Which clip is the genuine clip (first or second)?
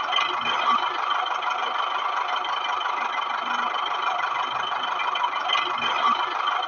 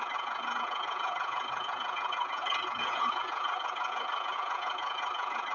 first